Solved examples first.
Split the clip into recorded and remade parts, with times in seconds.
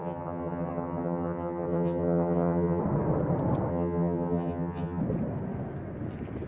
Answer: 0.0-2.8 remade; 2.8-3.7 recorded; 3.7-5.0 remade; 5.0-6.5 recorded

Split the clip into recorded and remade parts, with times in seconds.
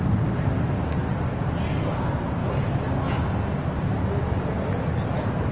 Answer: 0.0-5.5 recorded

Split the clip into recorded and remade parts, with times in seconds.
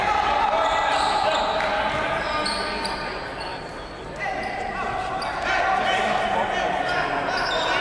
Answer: 0.0-7.8 recorded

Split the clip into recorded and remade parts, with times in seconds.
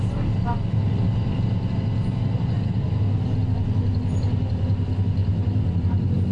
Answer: 0.0-5.2 recorded; 5.2-6.3 remade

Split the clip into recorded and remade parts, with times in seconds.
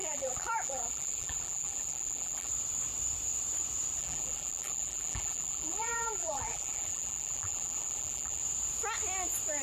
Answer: 0.0-2.5 remade; 2.5-4.0 recorded; 4.0-8.4 remade; 8.4-9.6 recorded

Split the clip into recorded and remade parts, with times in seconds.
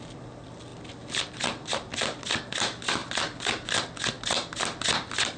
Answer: 0.0-5.4 recorded